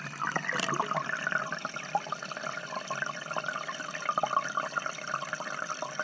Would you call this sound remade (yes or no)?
no